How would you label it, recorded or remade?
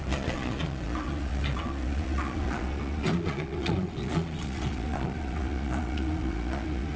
remade